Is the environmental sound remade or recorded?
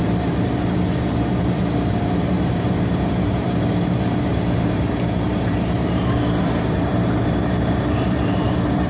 remade